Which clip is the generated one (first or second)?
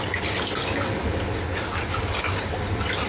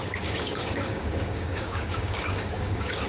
second